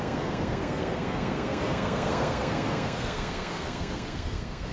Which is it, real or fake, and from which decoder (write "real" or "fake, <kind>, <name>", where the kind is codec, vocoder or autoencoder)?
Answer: fake, codec, SNAC